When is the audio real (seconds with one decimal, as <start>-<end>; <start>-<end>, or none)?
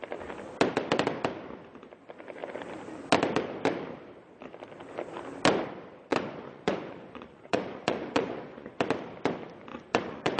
0.0-6.1; 8.8-9.7